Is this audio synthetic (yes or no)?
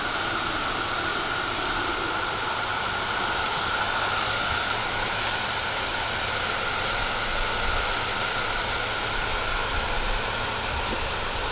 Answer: no